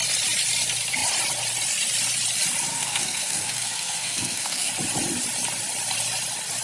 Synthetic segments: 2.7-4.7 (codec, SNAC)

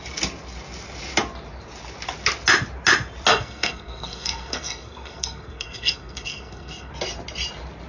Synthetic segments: 3.3-6.9 (codec, SNAC)

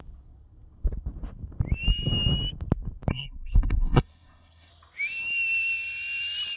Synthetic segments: 3.1-4.7 (codec, SNAC)

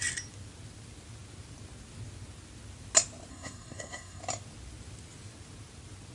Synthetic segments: 3.3-4.2 (codec, SNAC)

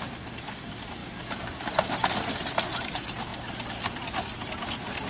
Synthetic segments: none

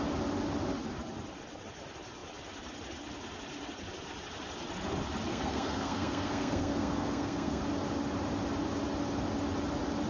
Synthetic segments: 5.3-7.6 (codec, SNAC)

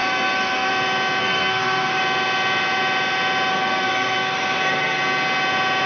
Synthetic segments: 0.0-0.7 (codec, SNAC); 1.2-2.0; 3.5-5.0